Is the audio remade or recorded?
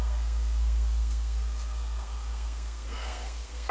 remade